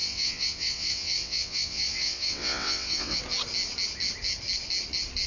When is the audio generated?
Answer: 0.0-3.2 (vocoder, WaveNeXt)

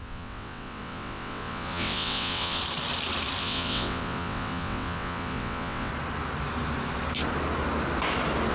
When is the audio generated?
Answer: 0.0-2.6 (vocoder, WaveNeXt); 3.4-5.9

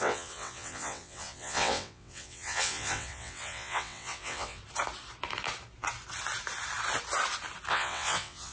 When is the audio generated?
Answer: 0.0-4.6 (vocoder, WaveNeXt); 7.7-8.5

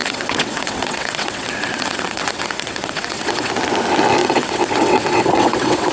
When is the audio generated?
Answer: 0.0-3.5 (vocoder, WaveNeXt); 4.2-5.9

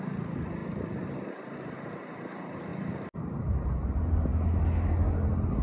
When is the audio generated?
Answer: none